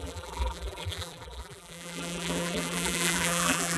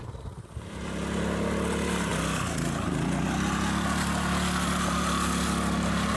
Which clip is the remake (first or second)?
first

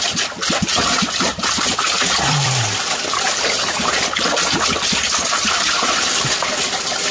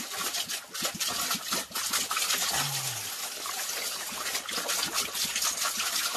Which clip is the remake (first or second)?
first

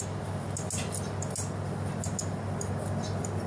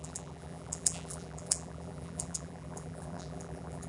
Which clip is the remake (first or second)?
second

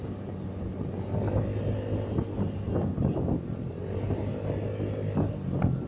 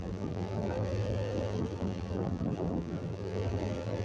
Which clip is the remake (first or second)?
second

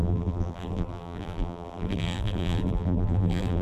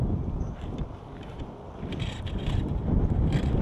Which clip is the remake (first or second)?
first